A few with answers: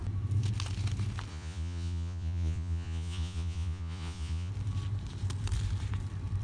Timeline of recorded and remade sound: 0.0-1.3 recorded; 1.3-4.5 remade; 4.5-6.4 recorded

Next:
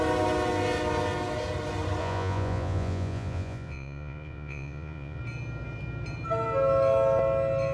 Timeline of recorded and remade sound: 0.0-2.0 recorded; 2.0-5.2 remade; 5.2-7.7 recorded

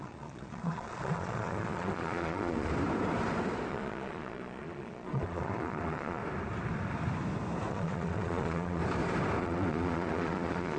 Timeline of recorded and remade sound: 0.0-2.7 remade; 2.7-3.7 recorded; 3.7-6.2 remade; 6.2-7.7 recorded; 7.7-8.8 remade; 8.8-9.4 recorded; 9.4-10.8 remade

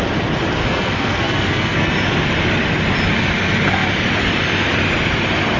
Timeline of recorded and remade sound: 0.0-0.6 recorded; 0.6-1.9 remade; 1.9-5.6 recorded

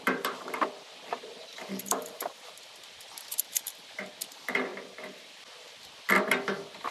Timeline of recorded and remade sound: 0.0-1.5 recorded; 1.5-2.5 remade; 2.5-4.7 recorded; 4.7-5.4 remade; 5.4-6.9 recorded

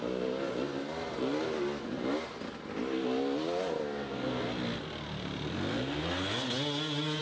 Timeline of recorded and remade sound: 0.0-7.2 recorded

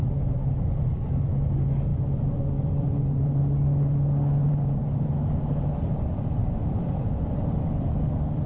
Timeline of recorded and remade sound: 0.0-0.9 remade; 0.9-1.9 recorded; 1.9-3.4 remade; 3.4-4.4 recorded; 4.4-5.9 remade; 5.9-6.4 recorded; 6.4-7.4 remade; 7.4-8.5 recorded

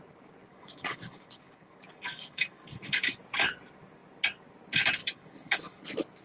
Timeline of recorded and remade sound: 0.0-0.5 recorded; 0.5-3.2 remade; 3.2-5.0 recorded; 5.0-5.8 remade; 5.8-6.2 recorded